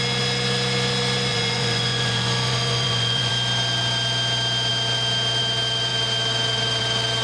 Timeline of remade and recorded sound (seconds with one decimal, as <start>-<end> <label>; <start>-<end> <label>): 0.0-1.3 recorded; 1.3-3.3 remade; 3.3-7.2 recorded